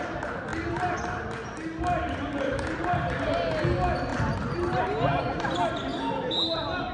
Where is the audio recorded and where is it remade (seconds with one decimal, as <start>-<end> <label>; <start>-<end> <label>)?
0.0-6.9 recorded